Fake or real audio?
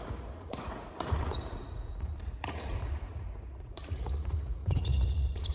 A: fake